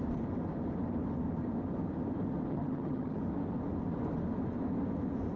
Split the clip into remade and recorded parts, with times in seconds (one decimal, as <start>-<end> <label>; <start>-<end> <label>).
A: 0.0-2.5 recorded; 2.5-3.2 remade; 3.2-5.4 recorded